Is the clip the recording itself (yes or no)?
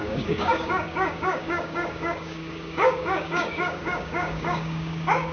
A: no